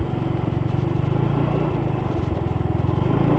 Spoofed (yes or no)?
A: no